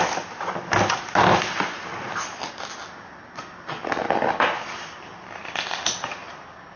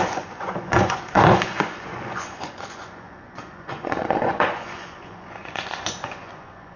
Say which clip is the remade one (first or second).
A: second